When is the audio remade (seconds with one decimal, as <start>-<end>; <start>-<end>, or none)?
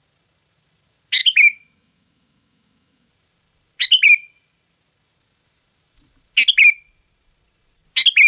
1.2-3.1